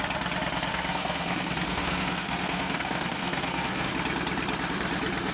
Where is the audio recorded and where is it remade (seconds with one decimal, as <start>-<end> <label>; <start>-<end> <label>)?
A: 0.0-0.7 recorded; 0.7-3.9 remade; 3.9-5.3 recorded